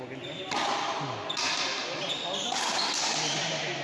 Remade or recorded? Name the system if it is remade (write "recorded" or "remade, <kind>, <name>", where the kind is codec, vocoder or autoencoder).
recorded